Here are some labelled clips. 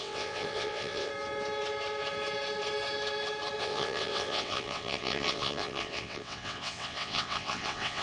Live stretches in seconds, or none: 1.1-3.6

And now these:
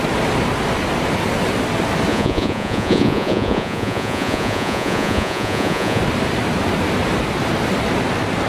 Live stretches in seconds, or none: 0.0-2.1; 6.0-8.5

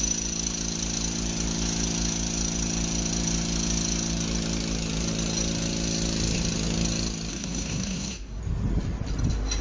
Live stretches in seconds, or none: 0.0-7.3; 8.4-9.6

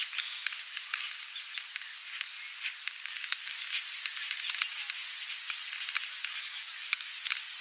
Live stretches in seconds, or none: 0.0-3.0; 3.6-6.2; 7.1-7.6

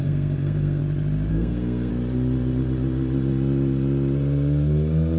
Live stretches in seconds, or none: 0.8-1.3; 1.9-5.2